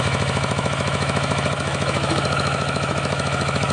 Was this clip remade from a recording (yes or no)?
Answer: yes